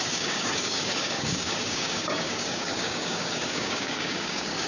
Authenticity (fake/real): fake